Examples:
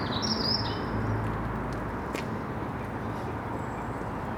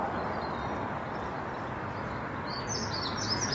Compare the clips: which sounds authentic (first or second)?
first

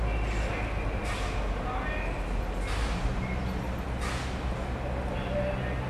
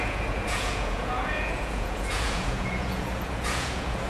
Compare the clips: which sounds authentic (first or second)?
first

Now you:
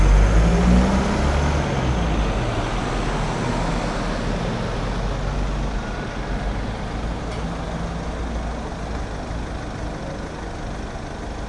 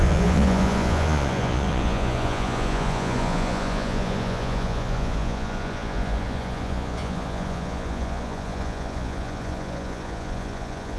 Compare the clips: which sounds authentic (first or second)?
first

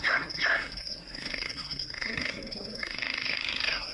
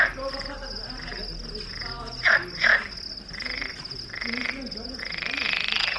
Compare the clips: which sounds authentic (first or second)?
second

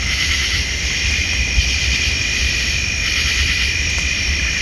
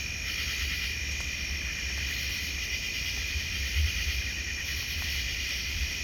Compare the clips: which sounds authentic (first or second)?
second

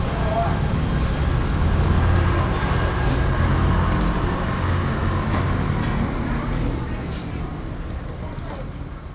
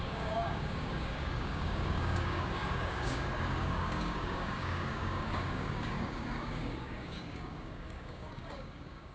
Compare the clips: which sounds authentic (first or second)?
first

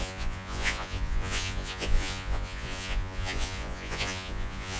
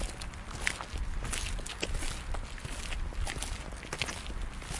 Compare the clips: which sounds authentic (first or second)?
second